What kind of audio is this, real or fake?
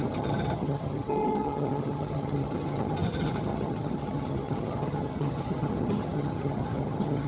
fake